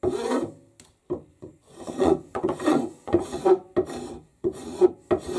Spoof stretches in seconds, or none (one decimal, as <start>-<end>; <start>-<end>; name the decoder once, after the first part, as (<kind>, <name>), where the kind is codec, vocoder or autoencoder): 1.3-3.4 (vocoder, Vocos); 4.3-4.9